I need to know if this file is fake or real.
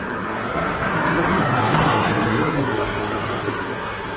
fake